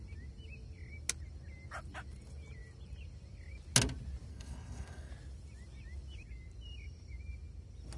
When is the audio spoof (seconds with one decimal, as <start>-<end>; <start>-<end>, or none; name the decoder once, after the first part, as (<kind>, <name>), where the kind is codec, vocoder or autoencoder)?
4.3-5.1 (codec, SNAC)